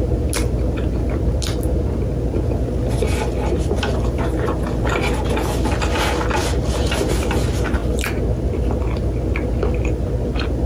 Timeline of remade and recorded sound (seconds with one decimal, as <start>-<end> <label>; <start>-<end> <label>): 0.0-10.7 recorded